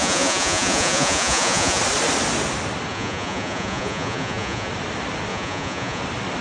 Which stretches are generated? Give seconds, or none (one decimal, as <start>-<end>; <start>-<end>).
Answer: 0.0-1.8; 2.9-4.7; 5.3-6.0